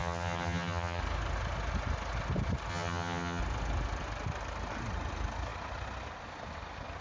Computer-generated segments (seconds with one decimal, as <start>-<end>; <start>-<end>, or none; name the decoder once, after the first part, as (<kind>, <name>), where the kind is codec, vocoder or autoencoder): 0.0-1.0 (vocoder, HiFi-GAN); 2.7-3.4